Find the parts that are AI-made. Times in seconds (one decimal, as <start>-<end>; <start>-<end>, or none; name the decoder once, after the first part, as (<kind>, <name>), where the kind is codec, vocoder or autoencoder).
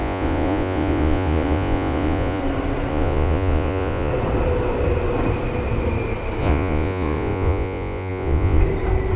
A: 0.0-2.4 (vocoder, Vocos); 2.9-4.1; 6.4-8.6